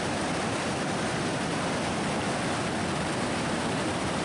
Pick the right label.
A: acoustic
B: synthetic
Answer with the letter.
A